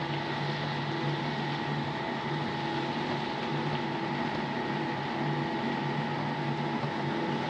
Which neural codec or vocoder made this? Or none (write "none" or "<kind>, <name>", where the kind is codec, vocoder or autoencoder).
none